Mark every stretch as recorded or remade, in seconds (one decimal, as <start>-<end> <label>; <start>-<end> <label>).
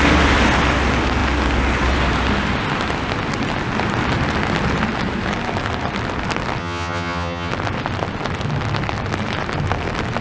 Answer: 0.0-6.6 recorded; 6.6-7.5 remade; 7.5-10.2 recorded